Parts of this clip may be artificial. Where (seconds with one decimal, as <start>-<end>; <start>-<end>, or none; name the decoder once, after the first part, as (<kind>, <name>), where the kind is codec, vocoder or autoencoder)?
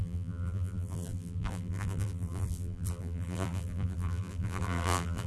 0.0-5.3 (vocoder, BigVGAN v2)